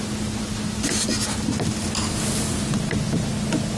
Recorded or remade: recorded